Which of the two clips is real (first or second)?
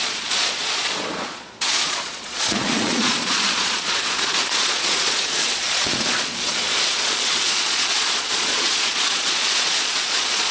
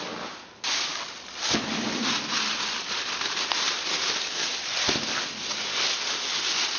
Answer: second